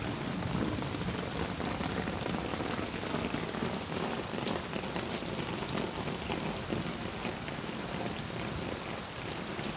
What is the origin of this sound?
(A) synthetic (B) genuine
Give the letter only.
B